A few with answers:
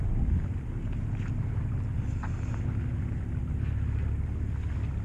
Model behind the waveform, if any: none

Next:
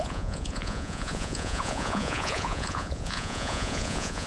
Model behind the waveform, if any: vocoder, Vocos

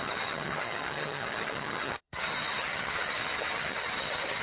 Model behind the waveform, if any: vocoder, HiFi-GAN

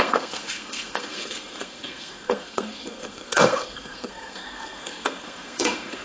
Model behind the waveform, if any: codec, SNAC